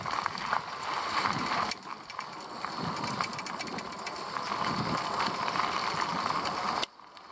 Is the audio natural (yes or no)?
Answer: yes